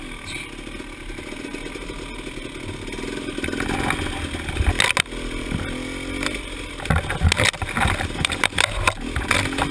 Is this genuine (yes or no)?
yes